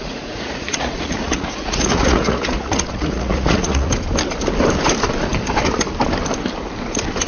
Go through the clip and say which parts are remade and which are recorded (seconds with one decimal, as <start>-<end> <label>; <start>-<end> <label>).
0.0-3.9 remade; 3.9-7.3 recorded